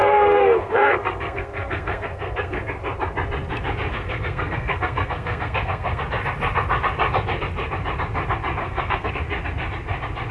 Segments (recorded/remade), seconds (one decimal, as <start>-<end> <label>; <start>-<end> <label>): 0.0-2.7 remade; 2.7-3.9 recorded; 3.9-6.0 remade; 6.0-8.6 recorded; 8.6-9.1 remade; 9.1-10.3 recorded